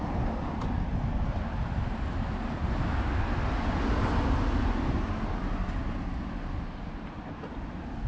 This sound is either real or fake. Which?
real